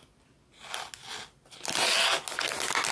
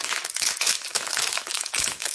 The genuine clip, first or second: first